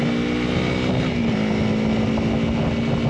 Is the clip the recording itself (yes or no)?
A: yes